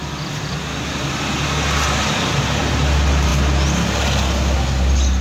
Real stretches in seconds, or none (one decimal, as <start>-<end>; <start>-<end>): 0.0-5.2